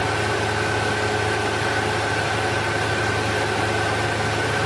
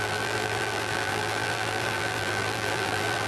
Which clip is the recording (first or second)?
first